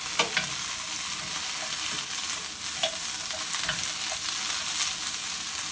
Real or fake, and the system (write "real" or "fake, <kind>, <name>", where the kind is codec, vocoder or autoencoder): real